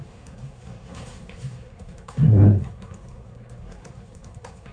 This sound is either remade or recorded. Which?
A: remade